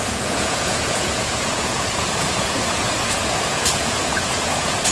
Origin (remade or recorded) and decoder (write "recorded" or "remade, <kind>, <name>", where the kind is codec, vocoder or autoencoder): remade, vocoder, Vocos